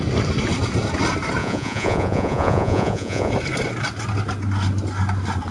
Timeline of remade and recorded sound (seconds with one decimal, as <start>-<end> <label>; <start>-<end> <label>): 0.0-1.4 recorded; 1.4-3.3 remade; 3.3-5.5 recorded